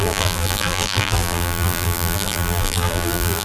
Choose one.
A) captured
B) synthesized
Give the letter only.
B